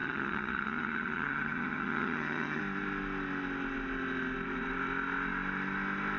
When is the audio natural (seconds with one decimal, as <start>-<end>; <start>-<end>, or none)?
2.6-6.2